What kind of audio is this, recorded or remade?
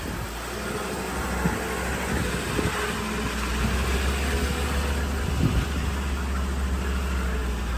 recorded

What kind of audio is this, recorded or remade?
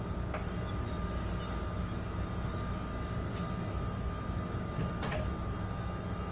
recorded